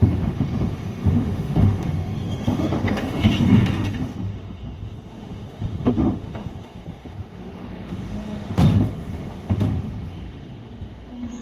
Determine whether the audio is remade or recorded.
remade